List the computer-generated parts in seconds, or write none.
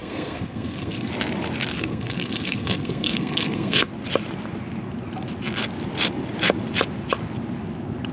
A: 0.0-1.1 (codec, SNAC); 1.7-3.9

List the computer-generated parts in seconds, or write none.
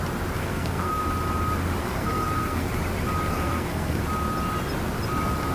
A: 0.4-1.0 (codec, SNAC); 1.8-2.7; 3.3-4.0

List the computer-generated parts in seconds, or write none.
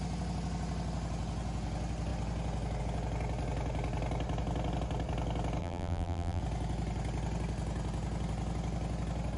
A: 5.6-6.4 (vocoder, BigVGAN v2)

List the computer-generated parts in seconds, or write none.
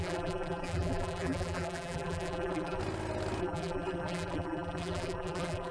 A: 0.0-2.8 (vocoder, BigVGAN v2); 3.4-5.7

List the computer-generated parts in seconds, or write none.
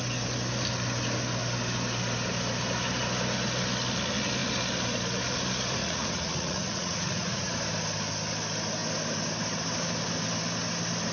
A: 5.8-7.5 (vocoder, Vocos)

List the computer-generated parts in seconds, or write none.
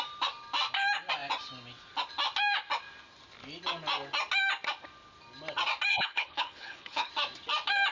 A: 5.9-7.1 (codec, HILCodec)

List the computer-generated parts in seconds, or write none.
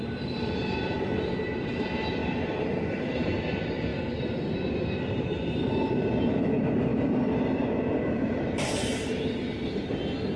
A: 2.2-3.1 (vocoder, BigVGAN v2); 3.9-5.5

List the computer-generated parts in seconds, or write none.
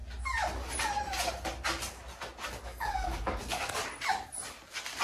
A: 2.6-3.8 (codec, DAC)